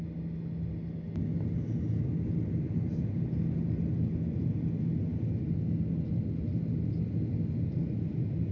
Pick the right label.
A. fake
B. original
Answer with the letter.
B